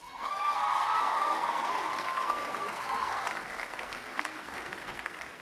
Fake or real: fake